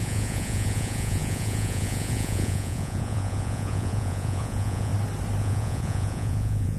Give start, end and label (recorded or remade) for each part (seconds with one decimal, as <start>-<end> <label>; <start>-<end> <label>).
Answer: 0.0-4.9 remade; 4.9-5.4 recorded; 5.4-6.8 remade